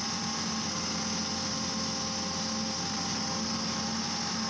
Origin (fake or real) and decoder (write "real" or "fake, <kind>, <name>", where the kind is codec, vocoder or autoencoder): real